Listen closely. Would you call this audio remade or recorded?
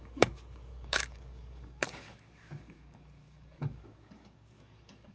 remade